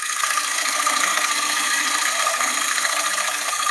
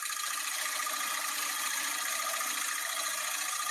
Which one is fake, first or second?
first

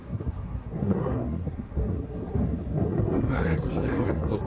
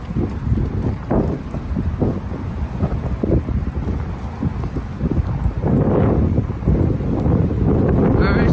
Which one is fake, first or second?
first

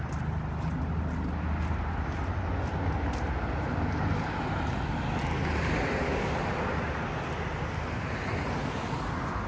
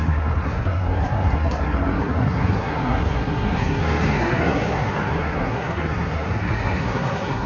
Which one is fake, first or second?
second